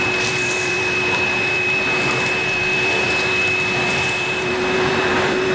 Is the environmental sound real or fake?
fake